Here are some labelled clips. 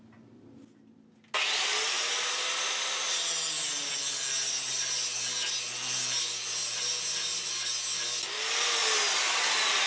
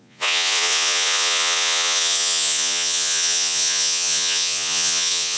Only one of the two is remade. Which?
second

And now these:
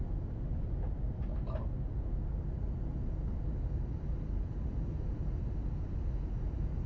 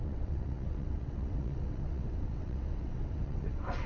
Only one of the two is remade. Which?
second